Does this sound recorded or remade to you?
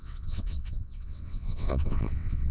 remade